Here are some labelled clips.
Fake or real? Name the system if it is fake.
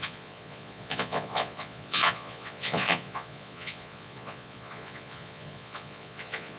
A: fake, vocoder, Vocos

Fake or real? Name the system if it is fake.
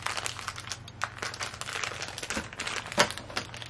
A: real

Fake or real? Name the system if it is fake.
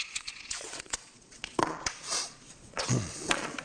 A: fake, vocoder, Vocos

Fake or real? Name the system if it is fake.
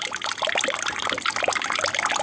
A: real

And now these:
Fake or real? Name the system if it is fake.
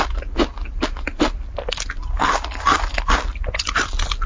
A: real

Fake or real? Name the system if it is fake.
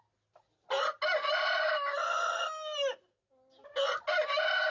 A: real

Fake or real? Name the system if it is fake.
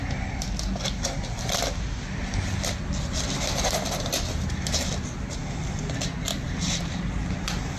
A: real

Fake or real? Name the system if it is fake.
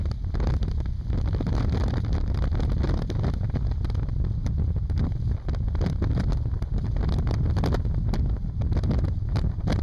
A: real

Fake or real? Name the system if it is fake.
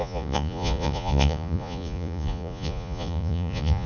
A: fake, vocoder, Vocos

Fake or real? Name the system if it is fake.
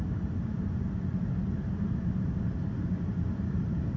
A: real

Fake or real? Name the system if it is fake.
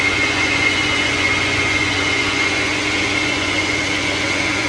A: fake, vocoder, Vocos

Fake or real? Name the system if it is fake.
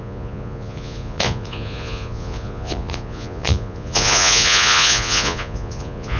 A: fake, vocoder, Vocos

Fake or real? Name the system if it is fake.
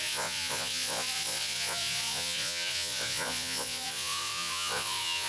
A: fake, vocoder, Vocos